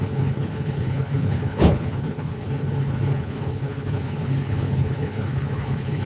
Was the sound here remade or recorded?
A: remade